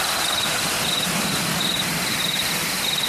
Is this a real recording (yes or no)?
yes